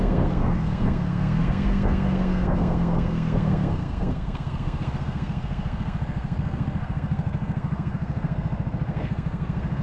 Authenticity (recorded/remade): remade